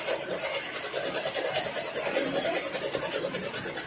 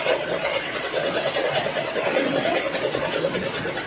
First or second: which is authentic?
first